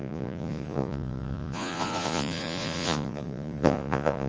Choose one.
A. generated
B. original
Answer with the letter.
A